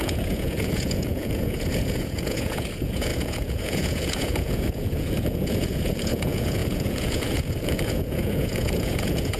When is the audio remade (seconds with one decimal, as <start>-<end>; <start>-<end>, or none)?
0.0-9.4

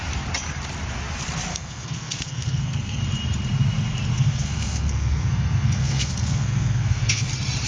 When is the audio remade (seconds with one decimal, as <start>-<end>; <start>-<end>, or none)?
1.5-3.0; 4.1-7.3

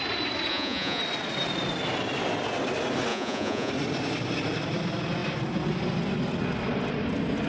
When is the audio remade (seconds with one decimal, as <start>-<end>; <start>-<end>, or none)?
0.5-1.0; 3.1-3.7

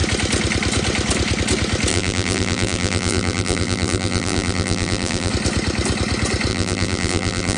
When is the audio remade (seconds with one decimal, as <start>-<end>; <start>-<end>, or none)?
1.9-5.3; 6.5-7.6

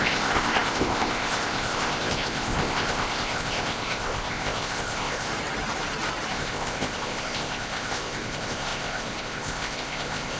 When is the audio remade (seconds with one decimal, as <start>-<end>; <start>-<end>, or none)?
0.0-5.3; 6.3-10.4

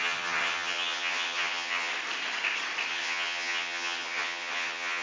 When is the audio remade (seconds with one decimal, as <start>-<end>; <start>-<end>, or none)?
0.0-1.9; 2.9-5.0